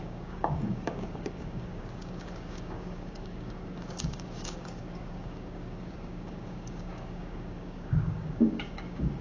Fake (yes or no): yes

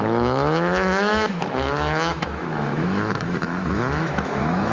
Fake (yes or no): yes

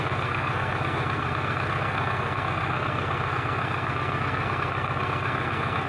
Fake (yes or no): yes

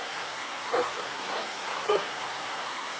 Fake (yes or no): yes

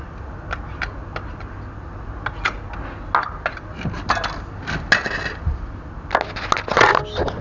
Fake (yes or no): no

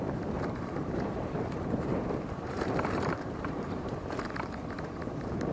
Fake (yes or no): yes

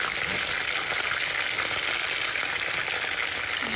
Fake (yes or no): no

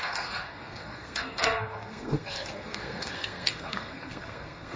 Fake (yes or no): yes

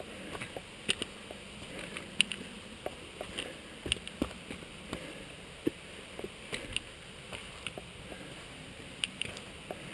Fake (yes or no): no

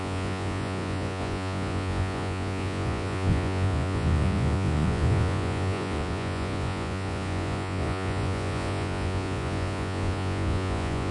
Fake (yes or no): yes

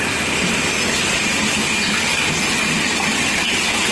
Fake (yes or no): no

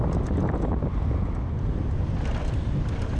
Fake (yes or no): no